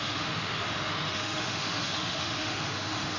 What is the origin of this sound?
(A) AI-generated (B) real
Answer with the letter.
A